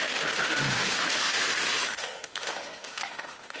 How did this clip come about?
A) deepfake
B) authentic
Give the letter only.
A